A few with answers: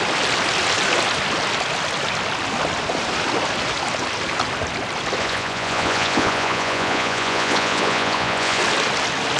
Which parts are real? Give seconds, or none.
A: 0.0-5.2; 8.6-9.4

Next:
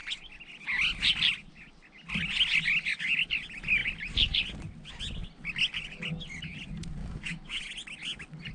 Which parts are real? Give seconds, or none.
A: 0.0-7.0; 7.6-8.5

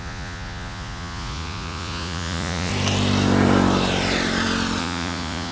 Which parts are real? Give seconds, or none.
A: 2.7-4.8